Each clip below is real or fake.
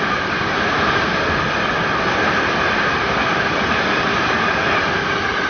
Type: real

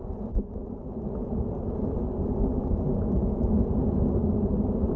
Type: real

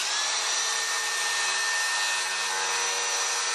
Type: real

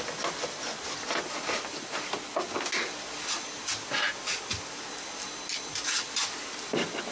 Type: real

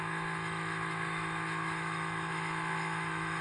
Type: fake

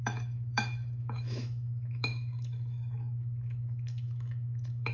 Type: fake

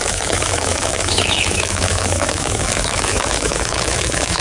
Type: fake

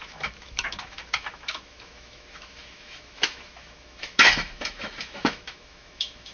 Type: fake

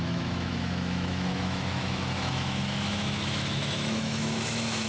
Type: fake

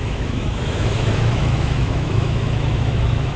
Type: fake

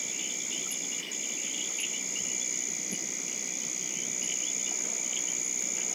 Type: real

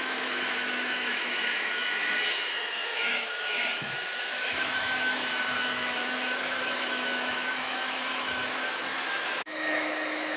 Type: fake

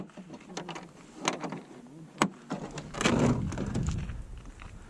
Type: real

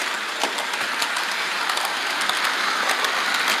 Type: real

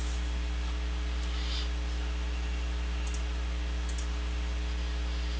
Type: real